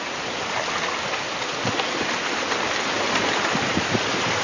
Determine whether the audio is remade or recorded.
recorded